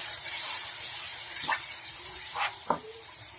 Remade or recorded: remade